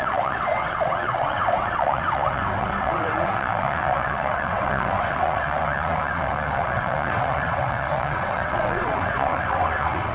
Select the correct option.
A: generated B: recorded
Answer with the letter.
A